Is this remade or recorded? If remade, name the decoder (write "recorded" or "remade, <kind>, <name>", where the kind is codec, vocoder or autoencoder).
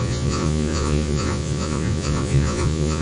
remade, vocoder, Vocos